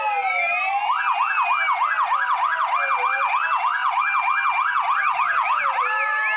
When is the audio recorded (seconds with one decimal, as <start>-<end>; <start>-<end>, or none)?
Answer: 0.0-6.4

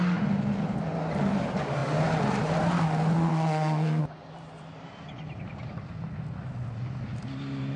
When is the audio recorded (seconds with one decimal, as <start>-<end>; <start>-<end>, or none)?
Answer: 0.0-3.3; 4.0-7.8

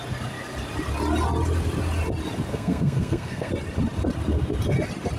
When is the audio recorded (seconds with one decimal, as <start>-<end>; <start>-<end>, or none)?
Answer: 0.0-2.5; 3.5-5.2